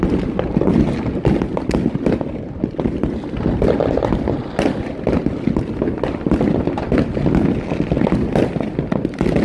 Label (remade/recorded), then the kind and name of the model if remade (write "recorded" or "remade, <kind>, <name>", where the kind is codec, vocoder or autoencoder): recorded